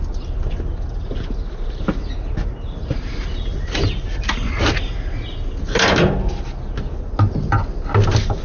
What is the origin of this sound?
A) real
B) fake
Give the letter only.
A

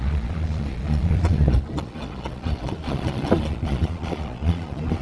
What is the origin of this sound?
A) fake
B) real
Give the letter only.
A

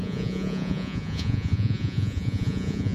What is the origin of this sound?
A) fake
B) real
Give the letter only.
A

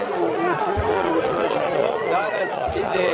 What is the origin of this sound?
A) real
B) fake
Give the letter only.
B